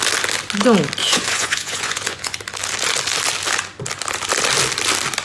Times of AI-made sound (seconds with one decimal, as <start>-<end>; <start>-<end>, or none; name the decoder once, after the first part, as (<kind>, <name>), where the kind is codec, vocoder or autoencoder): 1.0-2.4 (vocoder, Vocos)